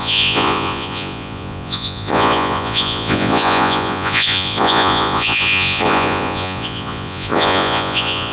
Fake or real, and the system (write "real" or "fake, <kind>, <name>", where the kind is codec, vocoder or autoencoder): fake, vocoder, Vocos